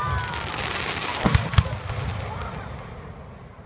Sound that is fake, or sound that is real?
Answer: real